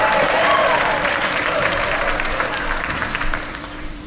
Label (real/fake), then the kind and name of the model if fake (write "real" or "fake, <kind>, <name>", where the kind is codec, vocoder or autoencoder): fake, vocoder, BigVGAN v2